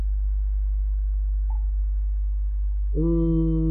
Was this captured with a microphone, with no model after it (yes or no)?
no